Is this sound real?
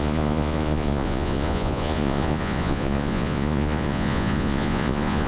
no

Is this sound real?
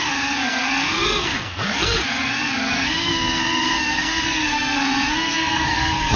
no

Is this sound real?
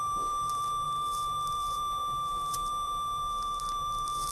no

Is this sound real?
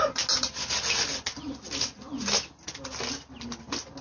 yes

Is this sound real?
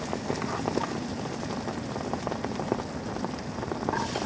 yes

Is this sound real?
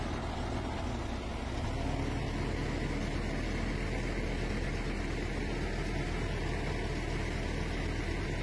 yes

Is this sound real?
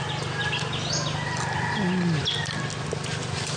yes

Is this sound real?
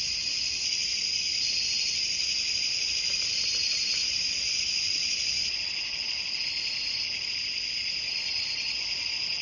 yes